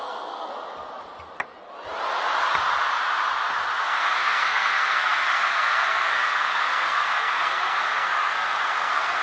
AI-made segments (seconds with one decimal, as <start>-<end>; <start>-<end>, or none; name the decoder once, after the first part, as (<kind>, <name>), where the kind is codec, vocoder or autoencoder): 0.0-0.5 (codec, SNAC); 3.8-9.2